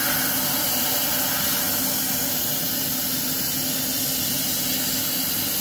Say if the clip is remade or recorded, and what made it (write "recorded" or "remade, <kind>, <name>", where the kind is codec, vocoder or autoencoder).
recorded